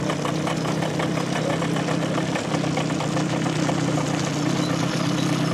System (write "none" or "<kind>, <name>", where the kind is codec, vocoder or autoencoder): none